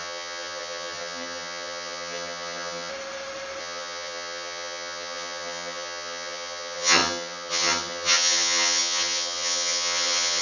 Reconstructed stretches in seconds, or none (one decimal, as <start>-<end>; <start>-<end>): 0.0-2.9; 3.6-10.4